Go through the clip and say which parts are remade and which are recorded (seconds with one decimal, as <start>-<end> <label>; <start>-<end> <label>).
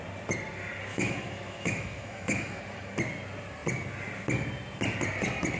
0.0-0.9 recorded; 0.9-2.6 remade; 2.6-5.6 recorded